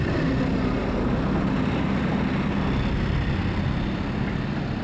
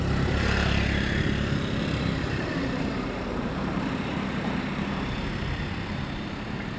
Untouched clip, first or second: first